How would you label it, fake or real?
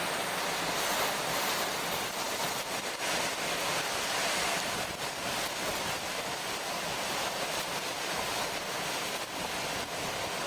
real